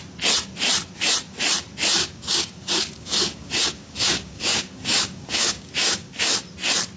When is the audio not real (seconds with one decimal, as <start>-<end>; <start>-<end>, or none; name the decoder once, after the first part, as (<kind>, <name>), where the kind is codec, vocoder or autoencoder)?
2.0-6.1 (codec, DAC)